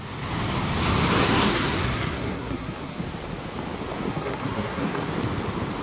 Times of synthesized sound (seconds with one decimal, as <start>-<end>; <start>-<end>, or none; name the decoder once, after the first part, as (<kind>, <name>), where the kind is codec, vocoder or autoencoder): 1.2-3.0 (codec, SNAC); 4.1-5.1